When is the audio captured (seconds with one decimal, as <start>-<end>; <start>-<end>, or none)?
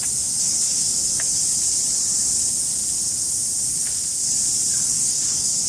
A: 1.4-4.8